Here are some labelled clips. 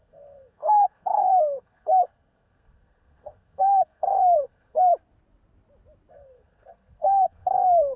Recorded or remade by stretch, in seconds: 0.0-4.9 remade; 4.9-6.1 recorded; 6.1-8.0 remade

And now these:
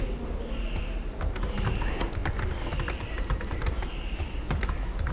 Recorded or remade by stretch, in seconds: 0.0-5.1 recorded

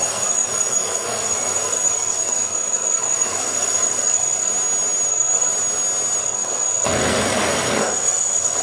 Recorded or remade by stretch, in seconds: 0.0-4.5 remade; 4.5-5.1 recorded; 5.1-5.5 remade; 5.5-6.2 recorded; 6.2-8.6 remade

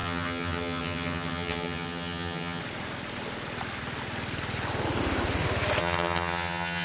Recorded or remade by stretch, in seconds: 0.0-2.6 remade; 2.6-5.8 recorded; 5.8-6.8 remade

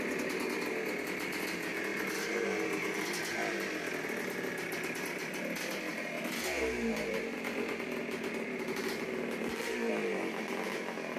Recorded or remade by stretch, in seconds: 0.0-11.2 recorded